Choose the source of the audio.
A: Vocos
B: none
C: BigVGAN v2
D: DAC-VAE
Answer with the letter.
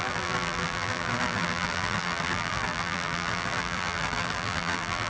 C